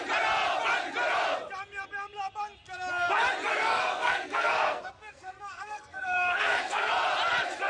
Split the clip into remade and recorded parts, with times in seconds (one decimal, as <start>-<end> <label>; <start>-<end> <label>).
0.0-3.5 recorded; 3.5-6.9 remade; 6.9-7.7 recorded